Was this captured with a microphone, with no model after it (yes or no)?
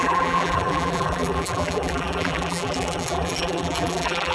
no